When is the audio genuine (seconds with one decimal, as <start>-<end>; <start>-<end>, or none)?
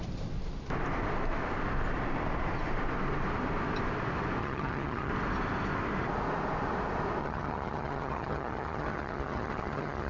0.0-4.4; 5.1-7.2